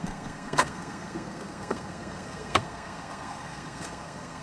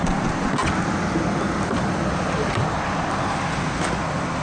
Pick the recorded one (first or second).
second